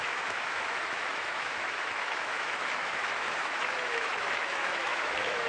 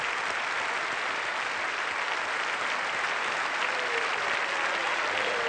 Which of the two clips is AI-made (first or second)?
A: first